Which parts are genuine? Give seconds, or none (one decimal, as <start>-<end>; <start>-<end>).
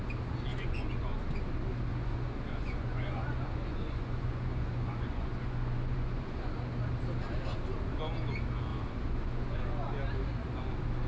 0.0-0.5; 1.2-1.9; 6.5-8.7; 9.6-11.1